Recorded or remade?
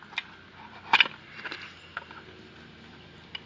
recorded